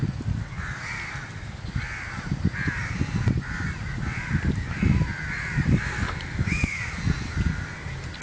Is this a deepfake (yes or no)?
no